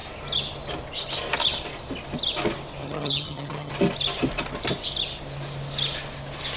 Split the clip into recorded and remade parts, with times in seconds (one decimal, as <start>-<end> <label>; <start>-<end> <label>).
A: 0.0-2.8 recorded; 2.8-3.7 remade; 3.7-6.6 recorded